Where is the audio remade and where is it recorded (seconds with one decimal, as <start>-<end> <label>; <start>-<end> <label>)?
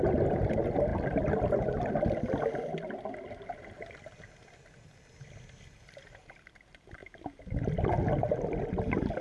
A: 0.0-9.2 recorded